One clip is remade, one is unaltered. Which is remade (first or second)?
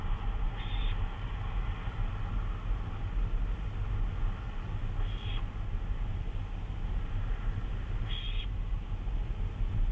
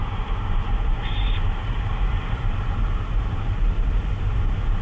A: second